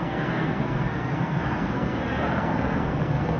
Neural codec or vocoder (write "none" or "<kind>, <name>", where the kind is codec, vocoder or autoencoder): codec, SNAC